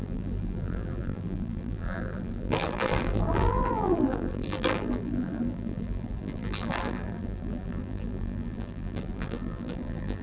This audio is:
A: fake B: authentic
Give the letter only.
A